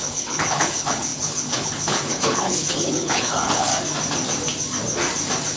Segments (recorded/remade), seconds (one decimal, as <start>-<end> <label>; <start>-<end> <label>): 0.0-3.7 remade; 3.7-5.6 recorded